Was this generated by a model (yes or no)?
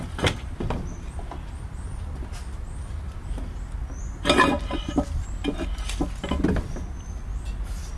no